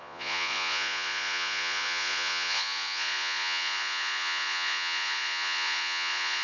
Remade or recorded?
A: remade